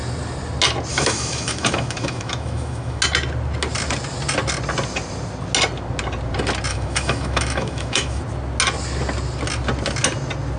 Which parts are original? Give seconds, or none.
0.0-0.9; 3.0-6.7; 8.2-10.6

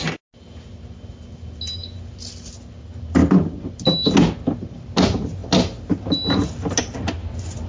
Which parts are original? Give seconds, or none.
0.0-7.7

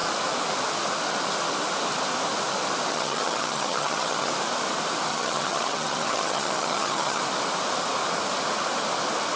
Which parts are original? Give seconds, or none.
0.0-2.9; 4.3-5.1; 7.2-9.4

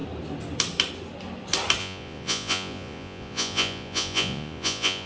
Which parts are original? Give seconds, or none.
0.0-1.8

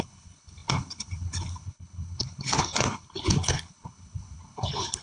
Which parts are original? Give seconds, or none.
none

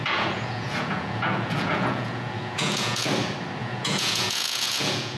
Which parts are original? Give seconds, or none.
3.1-3.6

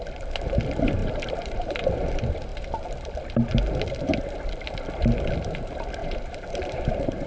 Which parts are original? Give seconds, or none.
0.0-1.0; 1.8-6.0